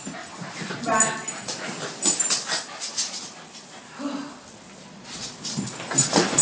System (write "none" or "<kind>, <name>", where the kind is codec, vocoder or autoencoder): none